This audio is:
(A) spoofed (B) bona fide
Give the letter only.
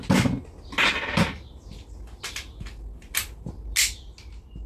B